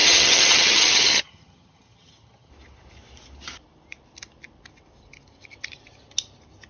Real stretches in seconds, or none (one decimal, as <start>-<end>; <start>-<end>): 2.5-6.7